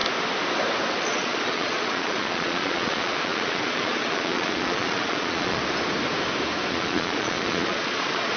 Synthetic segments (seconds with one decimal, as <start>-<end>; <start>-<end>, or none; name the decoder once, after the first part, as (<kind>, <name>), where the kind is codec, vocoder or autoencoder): 1.0-5.6 (vocoder, Vocos); 6.7-8.4